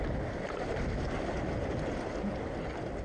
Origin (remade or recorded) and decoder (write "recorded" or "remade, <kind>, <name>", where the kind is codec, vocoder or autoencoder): recorded